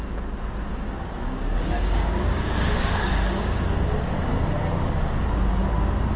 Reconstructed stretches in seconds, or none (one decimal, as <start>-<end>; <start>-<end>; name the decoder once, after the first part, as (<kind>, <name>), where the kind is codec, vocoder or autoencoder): 0.7-4.4 (codec, DAC)